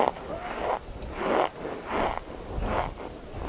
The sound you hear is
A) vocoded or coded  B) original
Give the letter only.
B